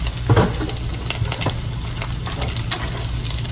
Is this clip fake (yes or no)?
no